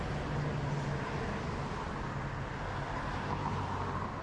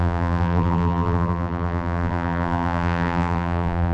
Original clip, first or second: first